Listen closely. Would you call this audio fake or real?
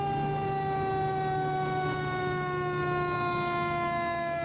real